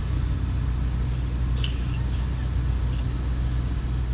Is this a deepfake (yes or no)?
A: no